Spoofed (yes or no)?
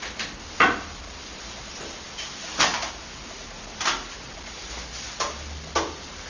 yes